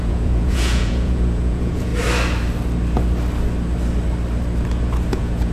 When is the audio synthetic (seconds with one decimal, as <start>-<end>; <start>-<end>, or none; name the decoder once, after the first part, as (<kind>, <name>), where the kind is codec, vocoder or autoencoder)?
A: 0.0-1.9 (vocoder, Vocos); 5.1-5.5